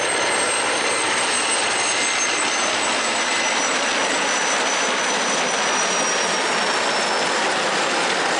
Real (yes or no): yes